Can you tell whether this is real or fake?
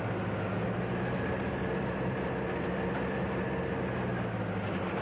real